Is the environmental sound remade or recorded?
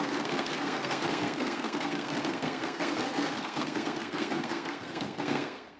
remade